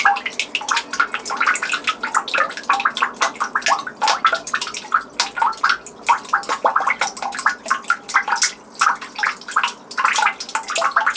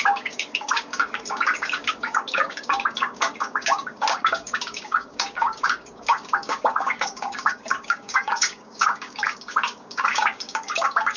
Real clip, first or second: first